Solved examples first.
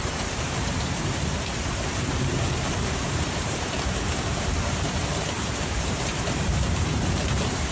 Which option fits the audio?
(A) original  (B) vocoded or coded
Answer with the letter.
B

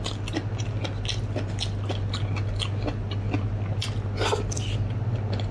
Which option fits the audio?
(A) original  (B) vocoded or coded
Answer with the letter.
A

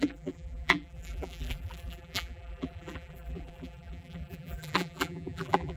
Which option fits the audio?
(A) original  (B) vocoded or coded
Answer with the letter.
B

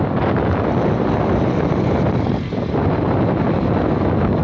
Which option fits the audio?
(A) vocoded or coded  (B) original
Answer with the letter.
B